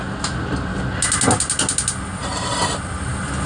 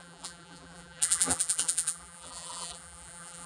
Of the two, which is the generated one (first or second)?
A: second